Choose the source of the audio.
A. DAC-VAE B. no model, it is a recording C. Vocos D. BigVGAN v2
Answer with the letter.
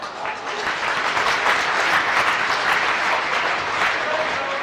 B